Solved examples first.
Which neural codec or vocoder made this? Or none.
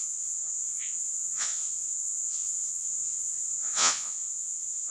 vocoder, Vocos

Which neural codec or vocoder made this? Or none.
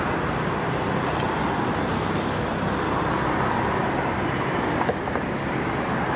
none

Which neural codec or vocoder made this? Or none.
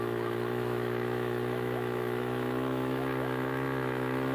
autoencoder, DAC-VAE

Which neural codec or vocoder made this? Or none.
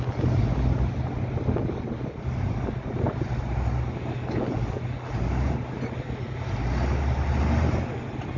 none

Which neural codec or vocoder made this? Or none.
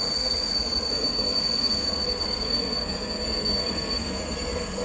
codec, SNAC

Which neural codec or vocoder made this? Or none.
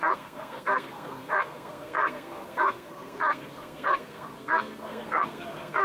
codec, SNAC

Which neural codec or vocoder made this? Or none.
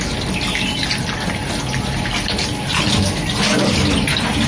none